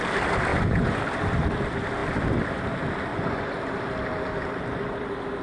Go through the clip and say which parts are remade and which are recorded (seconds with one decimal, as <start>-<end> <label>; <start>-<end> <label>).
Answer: 0.0-0.5 recorded; 0.5-1.0 remade; 1.0-3.1 recorded; 3.1-3.6 remade; 3.6-5.4 recorded